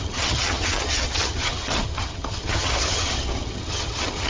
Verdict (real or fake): fake